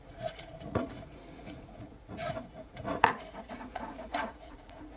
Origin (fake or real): fake